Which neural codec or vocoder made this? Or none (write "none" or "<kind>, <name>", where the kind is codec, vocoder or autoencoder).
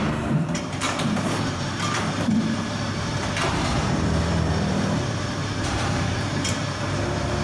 vocoder, BigVGAN v2